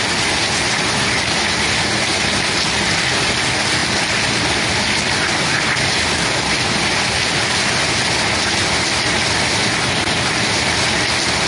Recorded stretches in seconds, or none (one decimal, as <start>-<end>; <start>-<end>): 0.0-11.5